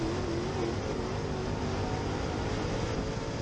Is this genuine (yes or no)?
yes